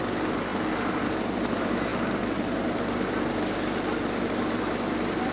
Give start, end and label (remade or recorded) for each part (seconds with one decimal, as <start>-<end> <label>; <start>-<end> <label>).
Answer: 0.0-1.9 recorded; 1.9-5.3 remade